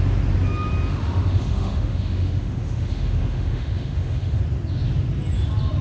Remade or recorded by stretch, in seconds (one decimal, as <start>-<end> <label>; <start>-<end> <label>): 0.0-0.9 recorded; 0.9-4.4 remade; 4.4-5.8 recorded